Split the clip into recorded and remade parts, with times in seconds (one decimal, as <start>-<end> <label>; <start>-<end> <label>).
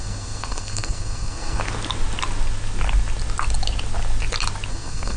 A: 0.0-1.6 remade; 1.6-4.7 recorded; 4.7-5.2 remade